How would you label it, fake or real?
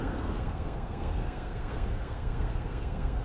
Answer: fake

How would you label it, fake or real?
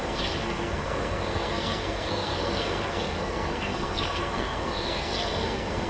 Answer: fake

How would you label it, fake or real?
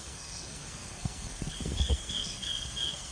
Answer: fake